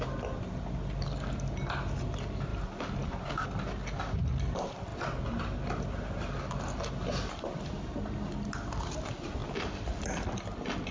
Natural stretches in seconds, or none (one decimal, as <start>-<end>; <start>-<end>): 0.0-10.9